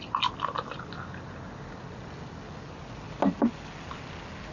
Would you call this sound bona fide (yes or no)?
yes